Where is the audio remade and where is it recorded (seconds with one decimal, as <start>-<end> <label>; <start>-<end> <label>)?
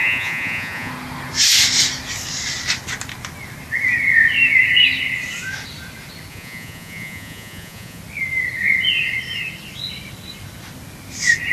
0.0-0.9 remade; 0.9-6.3 recorded; 6.3-8.0 remade; 8.0-11.5 recorded